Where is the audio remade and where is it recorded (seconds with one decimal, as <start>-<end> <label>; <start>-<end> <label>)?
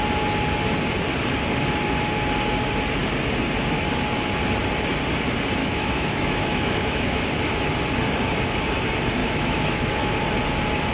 0.0-5.6 recorded; 5.6-7.3 remade; 7.3-9.2 recorded; 9.2-10.2 remade; 10.2-10.9 recorded